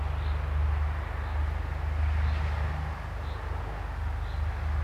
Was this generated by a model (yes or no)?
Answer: no